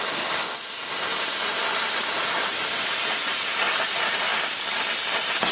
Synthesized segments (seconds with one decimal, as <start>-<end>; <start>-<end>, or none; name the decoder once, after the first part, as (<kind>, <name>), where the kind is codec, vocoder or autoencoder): none